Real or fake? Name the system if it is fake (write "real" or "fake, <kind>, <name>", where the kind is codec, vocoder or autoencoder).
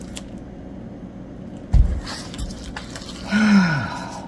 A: real